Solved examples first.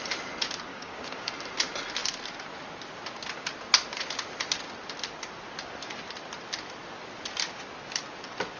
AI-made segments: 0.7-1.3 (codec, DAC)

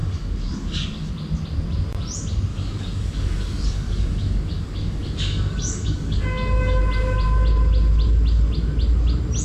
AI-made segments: 0.0-1.1 (codec, DAC); 2.5-6.8

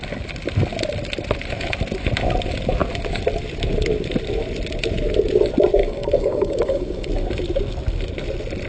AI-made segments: 5.8-7.1 (codec, DAC)

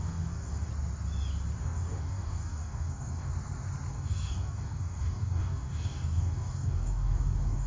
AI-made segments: 0.0-0.7 (codec, DAC); 1.6-3.3; 3.9-7.7

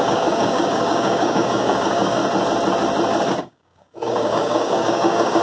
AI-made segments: 0.0-2.2 (codec, DAC); 3.4-5.4

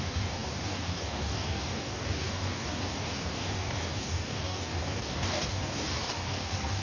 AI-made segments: 0.0-6.8 (codec, DAC)

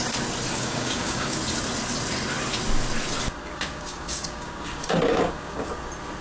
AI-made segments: 0.5-1.4 (codec, DAC); 3.4-5.7